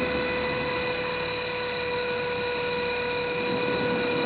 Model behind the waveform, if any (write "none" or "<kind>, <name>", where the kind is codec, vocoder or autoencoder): none